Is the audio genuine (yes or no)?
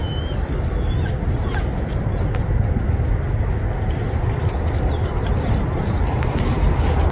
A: yes